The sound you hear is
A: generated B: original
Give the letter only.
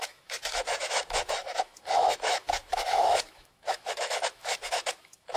A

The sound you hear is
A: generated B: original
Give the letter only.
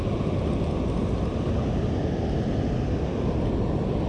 B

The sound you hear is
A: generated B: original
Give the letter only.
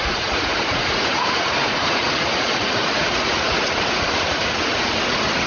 A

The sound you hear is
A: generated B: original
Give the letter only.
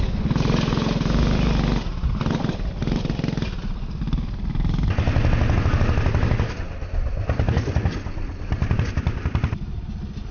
B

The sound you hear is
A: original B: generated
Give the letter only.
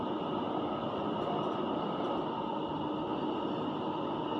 A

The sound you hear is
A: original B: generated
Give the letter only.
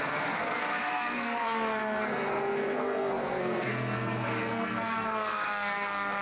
B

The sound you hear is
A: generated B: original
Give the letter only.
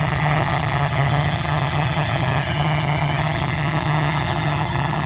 A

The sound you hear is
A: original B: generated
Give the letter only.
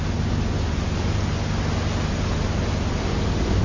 A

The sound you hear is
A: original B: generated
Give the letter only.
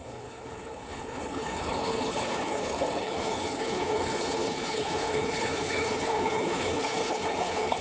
B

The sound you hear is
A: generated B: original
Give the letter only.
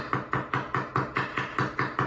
B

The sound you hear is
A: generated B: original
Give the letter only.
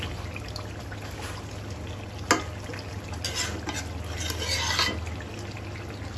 B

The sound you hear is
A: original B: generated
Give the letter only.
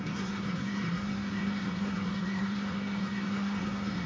B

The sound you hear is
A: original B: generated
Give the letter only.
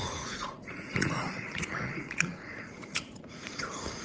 B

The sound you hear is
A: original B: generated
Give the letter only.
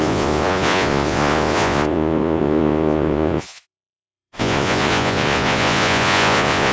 B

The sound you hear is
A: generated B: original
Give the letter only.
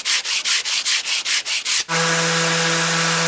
B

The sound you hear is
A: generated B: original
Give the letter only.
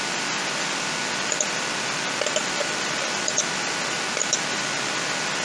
B